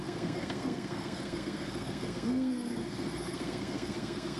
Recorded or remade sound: remade